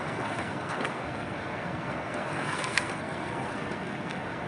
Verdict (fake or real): fake